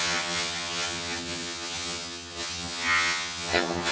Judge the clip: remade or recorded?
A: remade